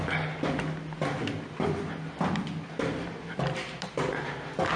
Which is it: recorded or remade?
recorded